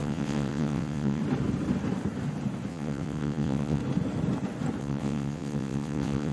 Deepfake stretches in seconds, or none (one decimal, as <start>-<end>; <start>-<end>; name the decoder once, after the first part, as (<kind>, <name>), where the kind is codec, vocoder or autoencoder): 0.0-1.2 (vocoder, WaveNeXt); 2.7-3.8; 4.8-6.3